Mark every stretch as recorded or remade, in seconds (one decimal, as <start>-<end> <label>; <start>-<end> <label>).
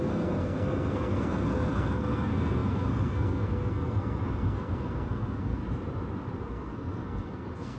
0.0-5.6 remade; 5.6-6.4 recorded; 6.4-7.8 remade